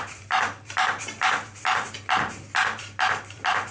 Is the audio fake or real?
fake